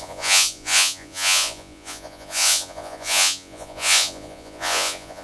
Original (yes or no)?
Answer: no